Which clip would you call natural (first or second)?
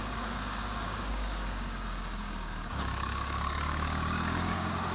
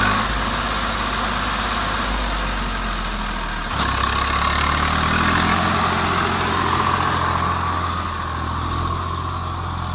second